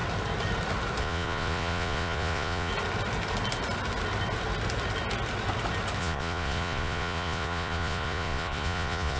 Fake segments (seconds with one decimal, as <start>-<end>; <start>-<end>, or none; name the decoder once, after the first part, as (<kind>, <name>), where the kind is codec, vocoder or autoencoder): 1.0-2.7 (vocoder, Vocos); 6.0-9.2